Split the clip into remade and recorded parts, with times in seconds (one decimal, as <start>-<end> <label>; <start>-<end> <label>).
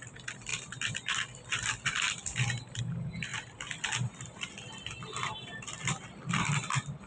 0.0-7.1 recorded